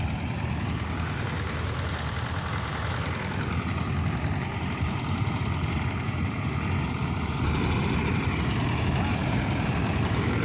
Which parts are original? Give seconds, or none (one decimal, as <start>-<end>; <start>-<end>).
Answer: 0.0-9.2; 9.7-10.4

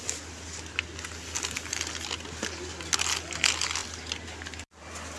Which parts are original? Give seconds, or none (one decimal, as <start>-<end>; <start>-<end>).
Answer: 0.0-3.8; 4.8-5.2

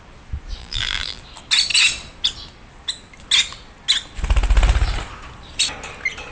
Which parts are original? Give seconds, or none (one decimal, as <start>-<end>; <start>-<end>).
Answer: 0.0-0.6; 1.2-6.3

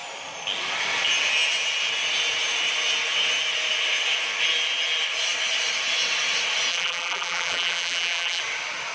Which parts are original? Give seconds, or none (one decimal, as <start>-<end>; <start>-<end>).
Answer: 0.0-6.7; 8.4-8.9

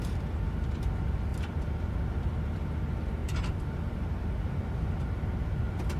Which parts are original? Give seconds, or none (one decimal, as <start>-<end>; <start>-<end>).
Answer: 0.9-3.2; 5.2-6.0

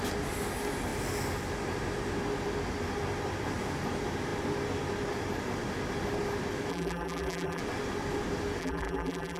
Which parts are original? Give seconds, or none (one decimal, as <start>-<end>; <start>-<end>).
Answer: 0.0-6.7; 7.6-8.6

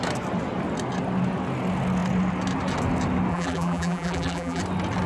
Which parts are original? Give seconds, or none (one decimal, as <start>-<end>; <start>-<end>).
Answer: 0.0-3.3; 4.6-5.1